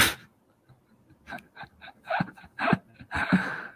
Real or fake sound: real